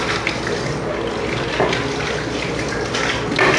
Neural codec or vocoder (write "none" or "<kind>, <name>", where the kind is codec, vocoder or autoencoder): none